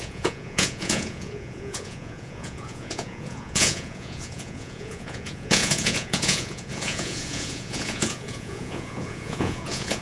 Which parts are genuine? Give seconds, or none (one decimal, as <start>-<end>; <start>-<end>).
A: none